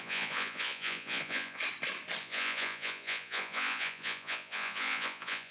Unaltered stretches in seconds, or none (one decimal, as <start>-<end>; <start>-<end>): 1.6-2.2